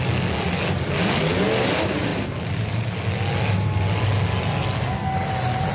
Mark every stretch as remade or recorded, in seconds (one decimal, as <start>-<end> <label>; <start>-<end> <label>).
0.0-5.7 recorded